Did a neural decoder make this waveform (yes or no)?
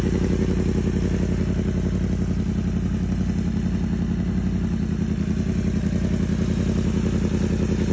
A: no